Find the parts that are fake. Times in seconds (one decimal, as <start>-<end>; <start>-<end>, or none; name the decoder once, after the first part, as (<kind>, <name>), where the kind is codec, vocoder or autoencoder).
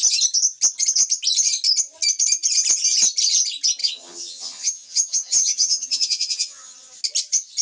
3.8-6.9 (vocoder, HiFi-GAN)